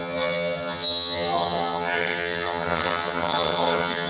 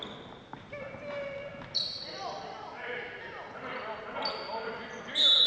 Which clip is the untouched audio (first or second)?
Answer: second